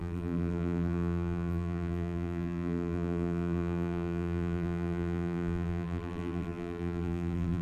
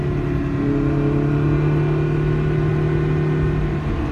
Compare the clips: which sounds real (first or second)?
second